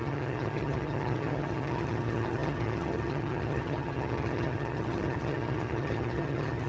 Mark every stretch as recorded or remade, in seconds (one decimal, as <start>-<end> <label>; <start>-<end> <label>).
0.0-6.7 remade